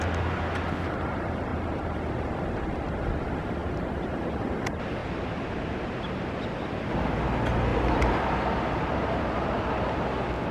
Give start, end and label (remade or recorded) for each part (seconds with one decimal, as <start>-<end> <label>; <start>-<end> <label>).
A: 0.0-1.5 recorded; 1.5-2.0 remade; 2.0-3.6 recorded; 3.6-4.6 remade; 4.6-5.0 recorded; 5.0-6.3 remade; 6.3-7.7 recorded; 7.7-9.2 remade; 9.2-10.5 recorded